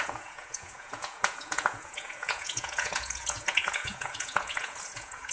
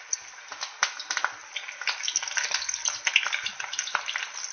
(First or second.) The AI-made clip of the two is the first